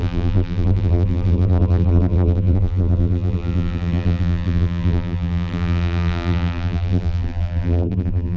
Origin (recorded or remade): remade